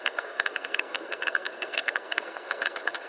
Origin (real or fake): fake